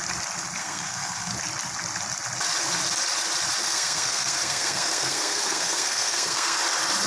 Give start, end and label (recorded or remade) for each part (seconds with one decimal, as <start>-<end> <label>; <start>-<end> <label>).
0.0-0.6 recorded; 0.6-1.3 remade; 1.3-3.6 recorded; 3.6-6.6 remade; 6.6-7.1 recorded